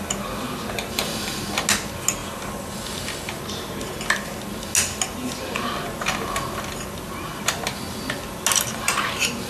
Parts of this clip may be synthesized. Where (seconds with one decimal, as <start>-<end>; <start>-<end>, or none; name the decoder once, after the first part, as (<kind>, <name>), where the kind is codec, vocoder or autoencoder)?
2.2-3.4 (vocoder, BigVGAN v2)